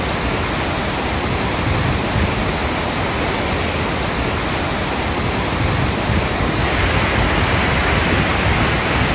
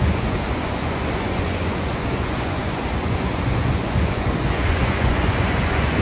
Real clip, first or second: first